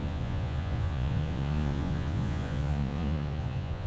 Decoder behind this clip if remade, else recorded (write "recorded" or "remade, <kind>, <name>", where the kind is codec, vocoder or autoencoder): remade, vocoder, Vocos